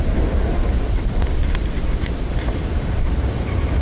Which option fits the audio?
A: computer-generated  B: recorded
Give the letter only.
B